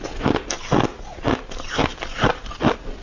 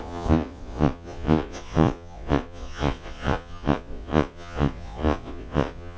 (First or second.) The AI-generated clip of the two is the second